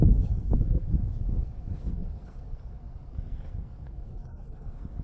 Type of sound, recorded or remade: remade